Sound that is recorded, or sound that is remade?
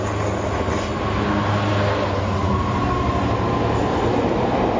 recorded